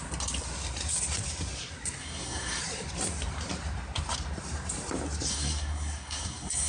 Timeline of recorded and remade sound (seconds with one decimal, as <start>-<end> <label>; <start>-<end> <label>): 0.0-2.0 recorded; 2.0-2.6 remade; 2.6-5.3 recorded; 5.3-6.7 remade